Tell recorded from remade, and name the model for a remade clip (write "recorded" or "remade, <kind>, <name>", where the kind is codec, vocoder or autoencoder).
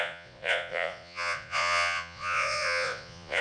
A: remade, vocoder, Vocos